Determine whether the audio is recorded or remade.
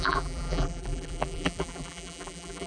remade